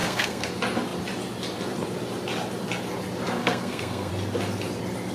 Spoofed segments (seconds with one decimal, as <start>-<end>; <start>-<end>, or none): 0.0-0.5; 3.4-4.1